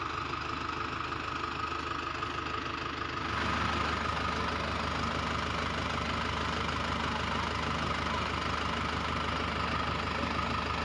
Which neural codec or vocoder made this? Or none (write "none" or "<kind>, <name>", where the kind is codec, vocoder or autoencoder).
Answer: none